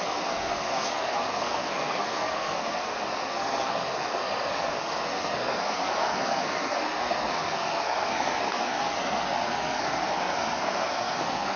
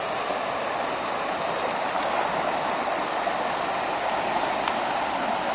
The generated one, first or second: first